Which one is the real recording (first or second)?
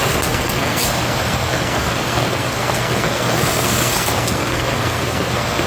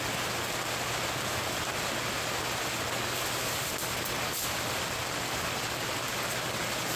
second